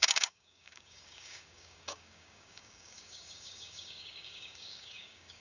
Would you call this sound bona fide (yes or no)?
no